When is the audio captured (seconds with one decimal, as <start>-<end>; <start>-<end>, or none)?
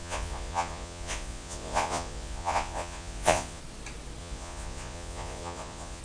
3.6-4.2